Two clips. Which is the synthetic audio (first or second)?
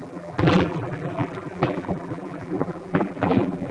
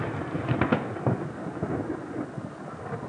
first